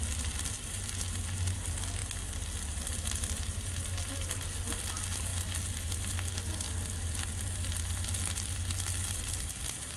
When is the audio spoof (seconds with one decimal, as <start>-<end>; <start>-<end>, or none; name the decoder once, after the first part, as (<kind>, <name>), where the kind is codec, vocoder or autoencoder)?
none